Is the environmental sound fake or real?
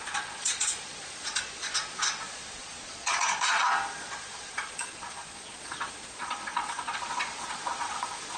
fake